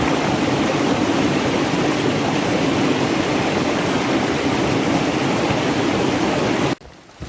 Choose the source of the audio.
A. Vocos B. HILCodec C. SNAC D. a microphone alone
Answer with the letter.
D